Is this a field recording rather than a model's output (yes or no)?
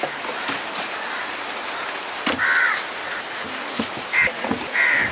yes